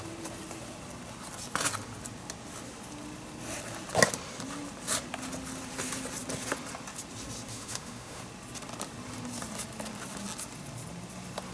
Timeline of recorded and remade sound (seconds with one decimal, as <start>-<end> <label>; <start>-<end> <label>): 0.0-7.5 recorded; 7.5-8.2 remade; 8.2-11.5 recorded